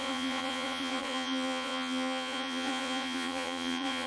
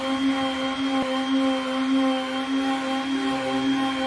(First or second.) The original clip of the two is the second